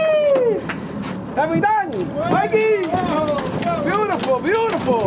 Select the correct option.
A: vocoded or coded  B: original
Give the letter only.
B